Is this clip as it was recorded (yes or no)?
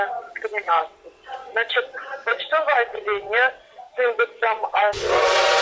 no